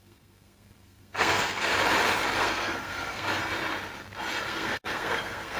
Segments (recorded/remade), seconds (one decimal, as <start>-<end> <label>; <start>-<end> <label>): 0.0-1.7 remade; 1.7-2.4 recorded; 2.4-3.4 remade; 3.4-4.5 recorded; 4.5-5.6 remade